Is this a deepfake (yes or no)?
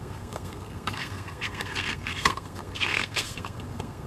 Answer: yes